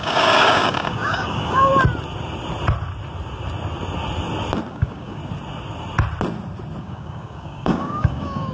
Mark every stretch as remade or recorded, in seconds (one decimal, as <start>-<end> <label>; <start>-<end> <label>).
0.0-1.7 remade; 1.7-4.7 recorded; 4.7-5.2 remade; 5.2-6.8 recorded; 6.8-8.5 remade